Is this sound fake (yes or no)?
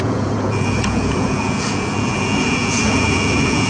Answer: yes